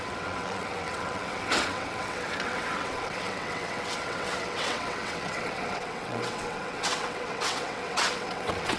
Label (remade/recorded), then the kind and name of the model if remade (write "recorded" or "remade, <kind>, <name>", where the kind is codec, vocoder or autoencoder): remade, vocoder, WaveNeXt